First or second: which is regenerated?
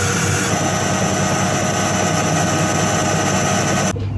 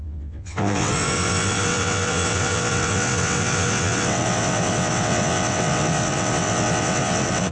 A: second